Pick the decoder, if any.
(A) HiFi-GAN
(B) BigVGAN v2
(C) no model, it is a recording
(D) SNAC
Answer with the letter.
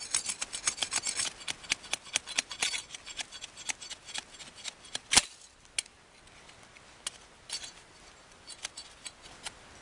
C